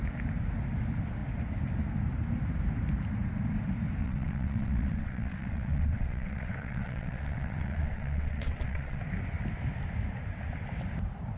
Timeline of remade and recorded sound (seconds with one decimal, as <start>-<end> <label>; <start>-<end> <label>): 0.0-4.0 recorded; 4.0-9.0 remade; 9.0-11.4 recorded